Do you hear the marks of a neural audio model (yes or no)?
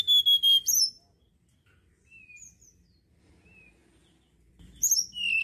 no